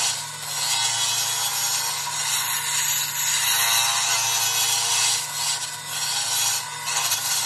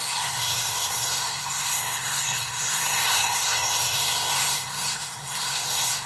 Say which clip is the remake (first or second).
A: second